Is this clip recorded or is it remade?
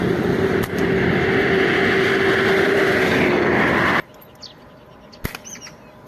recorded